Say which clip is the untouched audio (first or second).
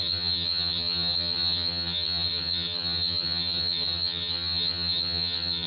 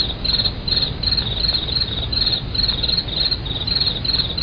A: second